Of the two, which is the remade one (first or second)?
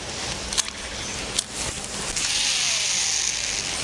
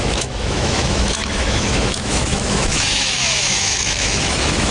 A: second